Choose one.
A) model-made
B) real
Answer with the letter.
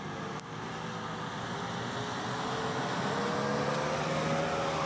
B